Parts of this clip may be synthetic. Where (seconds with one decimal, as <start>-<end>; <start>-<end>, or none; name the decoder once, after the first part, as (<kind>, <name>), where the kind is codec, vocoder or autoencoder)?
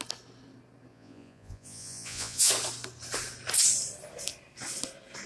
0.9-2.5 (vocoder, Vocos)